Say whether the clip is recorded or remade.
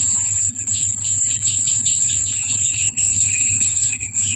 remade